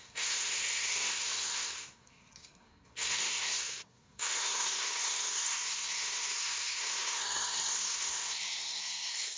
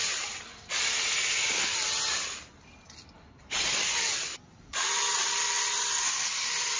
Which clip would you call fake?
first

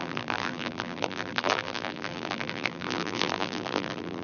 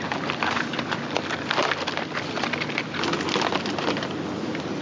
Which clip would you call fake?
first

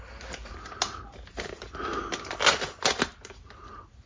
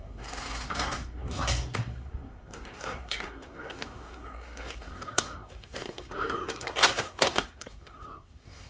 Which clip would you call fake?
second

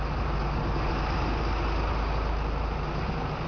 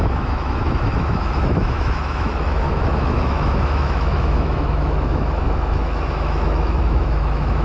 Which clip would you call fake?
second